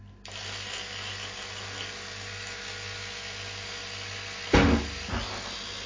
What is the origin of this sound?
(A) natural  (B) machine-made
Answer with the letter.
A